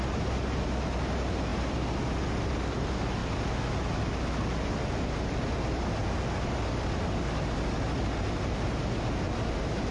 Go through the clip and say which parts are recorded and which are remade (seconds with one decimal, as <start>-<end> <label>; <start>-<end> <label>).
0.0-9.9 recorded